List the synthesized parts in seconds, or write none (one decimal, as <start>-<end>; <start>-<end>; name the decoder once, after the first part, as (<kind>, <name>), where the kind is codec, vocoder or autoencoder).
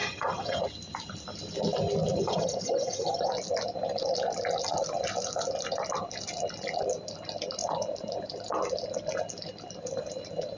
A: 0.0-0.6 (vocoder, HiFi-GAN); 2.2-3.3